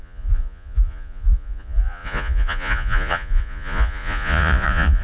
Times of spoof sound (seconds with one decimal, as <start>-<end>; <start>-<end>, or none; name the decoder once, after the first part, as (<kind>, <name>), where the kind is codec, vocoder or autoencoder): 0.0-5.0 (vocoder, Vocos)